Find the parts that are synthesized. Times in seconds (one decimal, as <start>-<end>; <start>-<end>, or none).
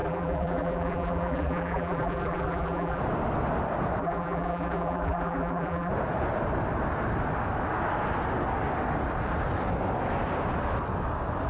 0.0-3.0; 4.0-5.9